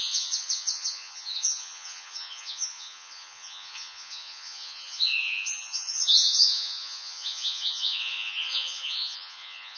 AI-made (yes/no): yes